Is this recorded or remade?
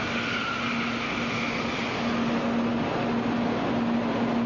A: recorded